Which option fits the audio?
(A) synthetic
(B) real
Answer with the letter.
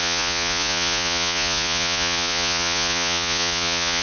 A